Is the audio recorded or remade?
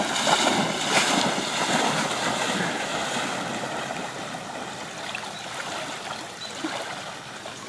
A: recorded